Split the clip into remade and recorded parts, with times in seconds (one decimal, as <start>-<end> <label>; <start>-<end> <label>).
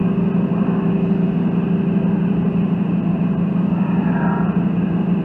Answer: 0.0-5.2 recorded